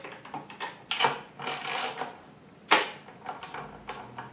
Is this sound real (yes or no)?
yes